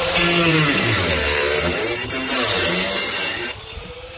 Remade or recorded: remade